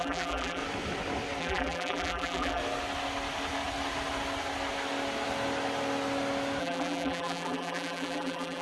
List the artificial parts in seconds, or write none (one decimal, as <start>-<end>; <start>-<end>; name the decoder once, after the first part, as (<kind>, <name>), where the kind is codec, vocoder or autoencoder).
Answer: 0.0-0.6 (vocoder, BigVGAN v2); 1.4-2.6; 6.6-8.6